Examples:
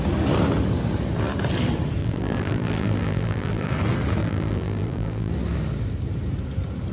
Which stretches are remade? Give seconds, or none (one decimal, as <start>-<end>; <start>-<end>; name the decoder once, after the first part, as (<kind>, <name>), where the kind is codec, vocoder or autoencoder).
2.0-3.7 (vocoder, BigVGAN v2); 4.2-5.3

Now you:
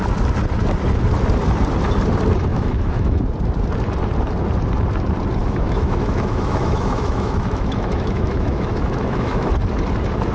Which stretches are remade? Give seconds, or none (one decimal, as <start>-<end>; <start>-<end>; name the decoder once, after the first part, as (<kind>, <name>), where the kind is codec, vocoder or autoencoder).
2.5-3.2 (autoencoder, DAC-VAE); 5.4-9.5

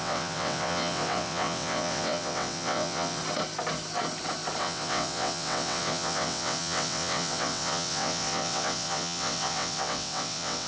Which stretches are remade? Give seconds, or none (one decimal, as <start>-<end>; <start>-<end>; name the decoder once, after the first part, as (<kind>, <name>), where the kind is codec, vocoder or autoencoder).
0.0-3.2 (vocoder, WaveNeXt); 4.6-10.7

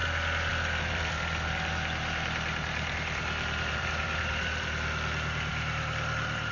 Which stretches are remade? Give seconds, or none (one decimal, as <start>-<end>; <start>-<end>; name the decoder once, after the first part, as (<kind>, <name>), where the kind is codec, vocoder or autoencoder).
0.5-6.5 (vocoder, BigVGAN v2)

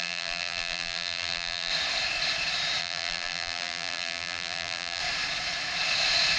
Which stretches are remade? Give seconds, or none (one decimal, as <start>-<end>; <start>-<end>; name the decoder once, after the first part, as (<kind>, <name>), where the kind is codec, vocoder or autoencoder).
0.0-1.7 (vocoder, BigVGAN v2); 2.8-5.0

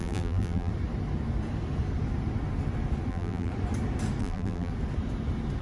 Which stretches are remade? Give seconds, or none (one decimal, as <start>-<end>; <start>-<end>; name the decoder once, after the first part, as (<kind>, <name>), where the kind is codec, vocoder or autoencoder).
0.0-0.7 (vocoder, BigVGAN v2); 3.1-3.5; 4.2-4.7